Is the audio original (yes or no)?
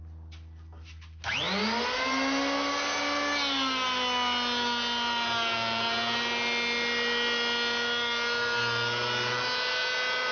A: yes